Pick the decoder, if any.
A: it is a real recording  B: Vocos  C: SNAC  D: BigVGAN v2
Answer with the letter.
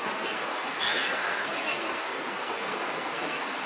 C